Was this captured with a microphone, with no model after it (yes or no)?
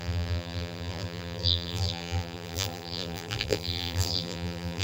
no